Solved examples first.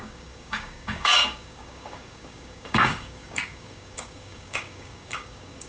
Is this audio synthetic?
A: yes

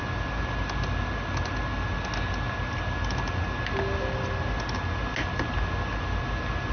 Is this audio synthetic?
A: no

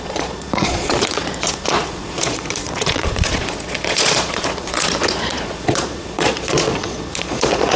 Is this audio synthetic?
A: yes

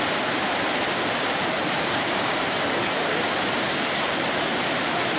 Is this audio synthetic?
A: yes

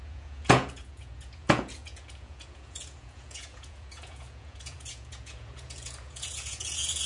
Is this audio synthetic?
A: yes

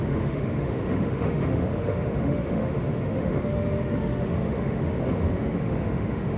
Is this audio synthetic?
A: yes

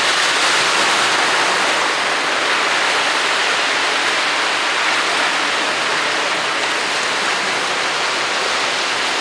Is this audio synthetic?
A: no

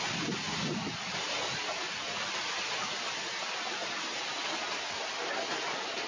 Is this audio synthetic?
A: no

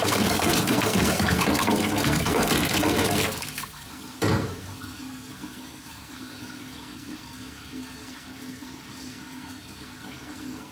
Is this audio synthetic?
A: yes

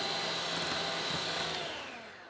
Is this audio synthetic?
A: no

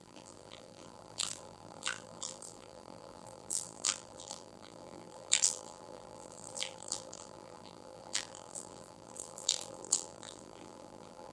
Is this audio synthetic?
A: yes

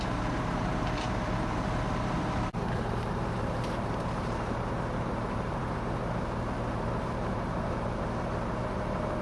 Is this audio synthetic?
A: yes